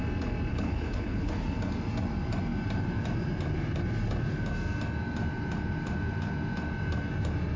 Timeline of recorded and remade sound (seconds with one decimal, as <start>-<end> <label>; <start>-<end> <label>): 0.0-0.5 recorded; 0.5-1.3 remade; 1.3-7.6 recorded